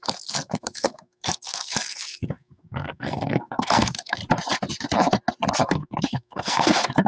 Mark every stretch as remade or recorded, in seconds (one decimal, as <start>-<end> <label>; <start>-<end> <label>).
0.0-4.2 remade; 4.2-5.6 recorded; 5.6-7.1 remade